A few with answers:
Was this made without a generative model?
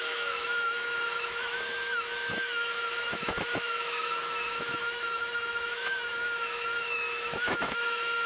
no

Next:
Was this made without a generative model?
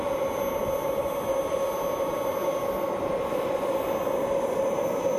yes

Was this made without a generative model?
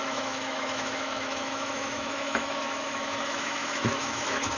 no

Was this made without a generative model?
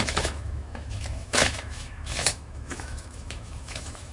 no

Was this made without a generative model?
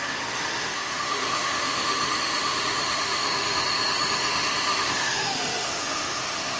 no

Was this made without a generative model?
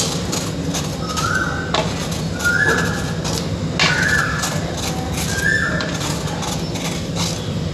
yes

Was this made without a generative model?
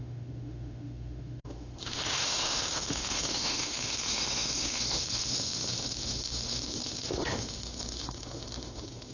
no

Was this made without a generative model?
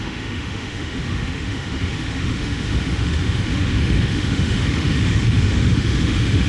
no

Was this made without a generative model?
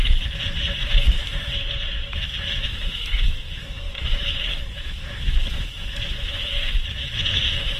no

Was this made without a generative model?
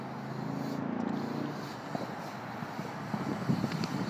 yes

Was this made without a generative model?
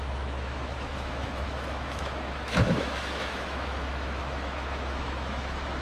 no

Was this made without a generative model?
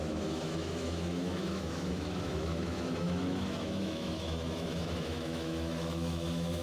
no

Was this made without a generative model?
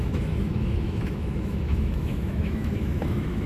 no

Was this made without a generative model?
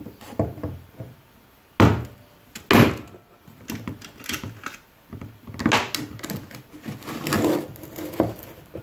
yes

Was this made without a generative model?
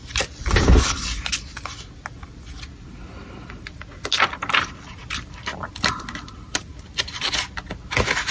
yes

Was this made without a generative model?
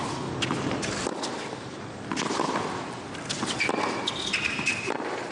yes